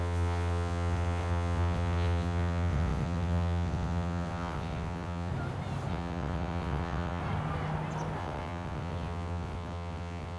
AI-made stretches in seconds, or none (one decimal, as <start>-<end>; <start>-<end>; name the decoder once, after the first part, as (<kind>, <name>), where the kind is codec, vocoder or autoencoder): 0.0-5.3 (vocoder, WaveNeXt); 5.9-7.2; 8.2-10.4